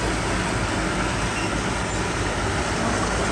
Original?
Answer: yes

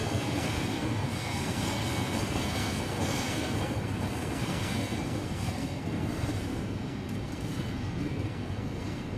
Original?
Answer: no